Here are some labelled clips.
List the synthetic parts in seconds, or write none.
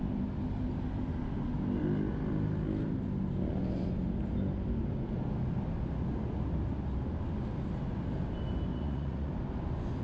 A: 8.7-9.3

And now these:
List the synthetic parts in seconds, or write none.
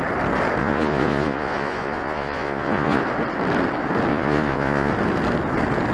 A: 0.6-3.0; 4.1-4.9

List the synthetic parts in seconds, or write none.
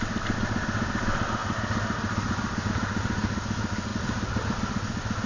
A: none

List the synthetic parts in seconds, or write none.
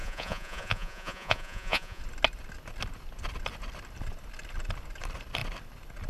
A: 0.0-2.0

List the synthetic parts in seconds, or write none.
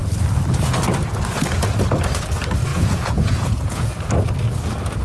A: 2.7-4.1